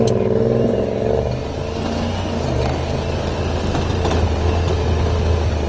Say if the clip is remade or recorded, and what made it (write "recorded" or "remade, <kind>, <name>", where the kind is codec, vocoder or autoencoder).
recorded